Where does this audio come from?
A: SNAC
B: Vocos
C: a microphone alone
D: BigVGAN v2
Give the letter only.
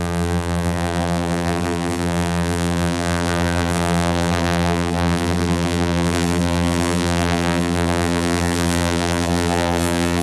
D